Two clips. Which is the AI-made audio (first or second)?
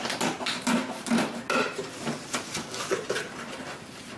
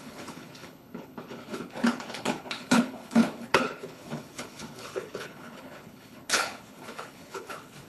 second